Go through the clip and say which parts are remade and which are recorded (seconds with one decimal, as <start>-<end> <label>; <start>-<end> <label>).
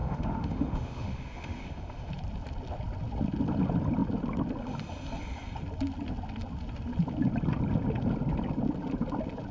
0.0-2.1 remade; 2.1-9.5 recorded